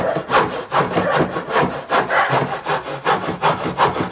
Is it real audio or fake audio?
real